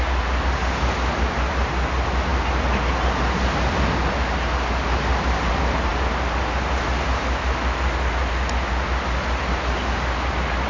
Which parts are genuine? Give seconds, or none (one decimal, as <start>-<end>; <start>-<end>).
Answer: 0.0-10.7